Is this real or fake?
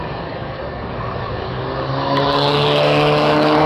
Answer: fake